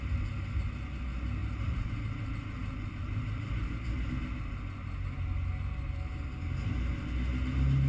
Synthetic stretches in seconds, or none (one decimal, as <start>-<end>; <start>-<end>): 1.4-4.1